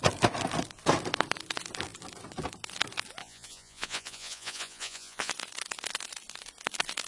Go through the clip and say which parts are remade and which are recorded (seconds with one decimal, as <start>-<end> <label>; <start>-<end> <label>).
0.0-3.2 recorded; 3.2-5.3 remade; 5.3-7.1 recorded